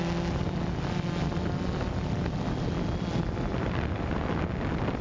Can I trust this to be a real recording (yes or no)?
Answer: yes